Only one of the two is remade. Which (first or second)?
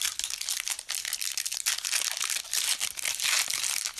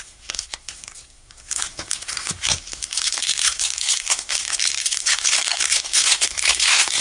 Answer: second